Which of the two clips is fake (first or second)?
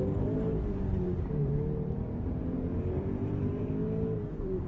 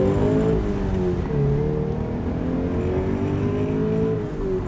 first